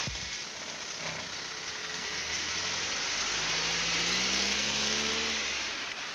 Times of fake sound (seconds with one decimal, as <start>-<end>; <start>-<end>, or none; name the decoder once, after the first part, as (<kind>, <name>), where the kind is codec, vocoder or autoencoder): 1.8-2.5 (codec, SNAC); 4.3-5.1